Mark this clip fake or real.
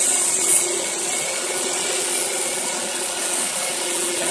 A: fake